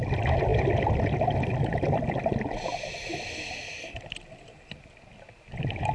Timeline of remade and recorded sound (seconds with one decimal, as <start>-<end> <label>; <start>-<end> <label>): 0.0-5.9 recorded